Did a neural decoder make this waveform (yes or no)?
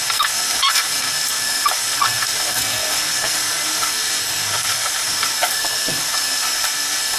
yes